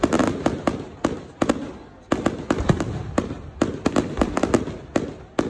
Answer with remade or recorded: recorded